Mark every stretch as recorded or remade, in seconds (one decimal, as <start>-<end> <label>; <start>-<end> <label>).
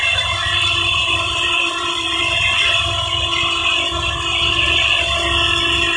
0.0-1.0 recorded; 1.0-2.2 remade; 2.2-6.0 recorded